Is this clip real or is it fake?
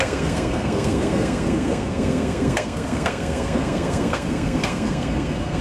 fake